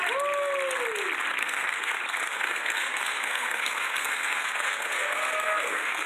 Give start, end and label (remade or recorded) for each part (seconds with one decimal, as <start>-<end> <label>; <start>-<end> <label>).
0.0-1.4 recorded; 1.4-1.9 remade; 1.9-2.3 recorded; 2.3-6.1 remade

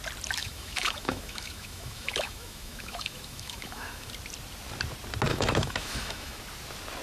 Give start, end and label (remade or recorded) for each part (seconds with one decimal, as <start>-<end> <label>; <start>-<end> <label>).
0.0-0.4 recorded; 0.4-4.1 remade; 4.1-5.3 recorded; 5.3-6.4 remade; 6.4-7.0 recorded

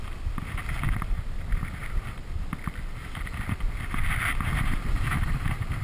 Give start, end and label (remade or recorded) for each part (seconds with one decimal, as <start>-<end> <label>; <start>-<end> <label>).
0.0-5.8 recorded

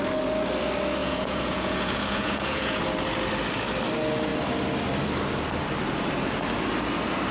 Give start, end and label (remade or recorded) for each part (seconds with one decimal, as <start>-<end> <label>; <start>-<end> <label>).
0.0-1.0 recorded; 1.0-2.8 remade; 2.8-7.3 recorded

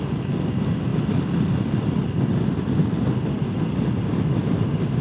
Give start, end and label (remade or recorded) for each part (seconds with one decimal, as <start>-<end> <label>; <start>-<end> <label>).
0.0-0.9 remade; 0.9-3.6 recorded; 3.6-5.0 remade

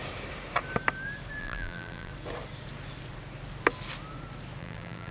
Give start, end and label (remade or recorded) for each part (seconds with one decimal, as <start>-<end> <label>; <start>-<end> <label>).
0.0-1.4 recorded; 1.4-2.1 remade; 2.1-4.6 recorded; 4.6-5.1 remade

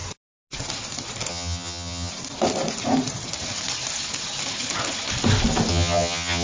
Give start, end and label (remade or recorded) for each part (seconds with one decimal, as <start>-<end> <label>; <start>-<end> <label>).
0.0-1.3 recorded; 1.3-2.1 remade; 2.1-5.7 recorded; 5.7-6.4 remade